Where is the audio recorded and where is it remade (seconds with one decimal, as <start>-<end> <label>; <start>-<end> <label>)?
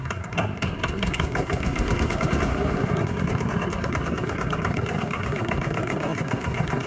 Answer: 0.0-6.9 remade